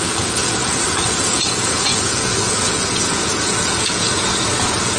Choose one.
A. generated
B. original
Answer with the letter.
A